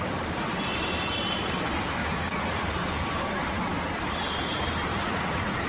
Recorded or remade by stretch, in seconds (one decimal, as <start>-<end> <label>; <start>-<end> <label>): 0.0-2.0 recorded; 2.0-2.7 remade; 2.7-4.9 recorded; 4.9-5.7 remade